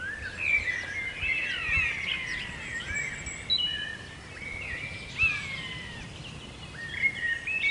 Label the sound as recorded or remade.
recorded